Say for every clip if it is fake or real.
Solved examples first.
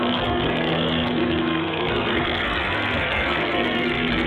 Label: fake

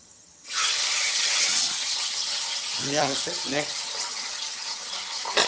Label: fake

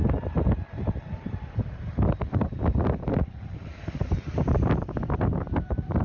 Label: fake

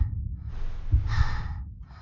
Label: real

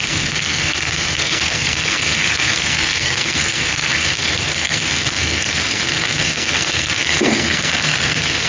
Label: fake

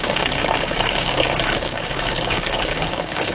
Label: fake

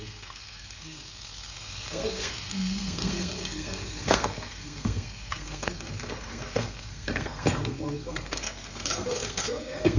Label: fake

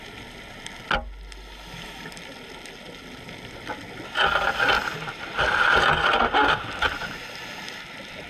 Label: real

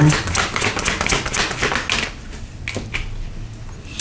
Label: real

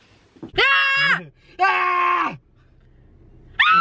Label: real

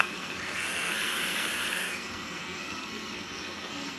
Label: fake